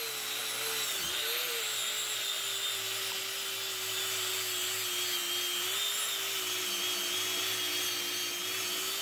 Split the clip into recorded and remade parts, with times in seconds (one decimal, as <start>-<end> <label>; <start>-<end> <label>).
0.0-9.0 recorded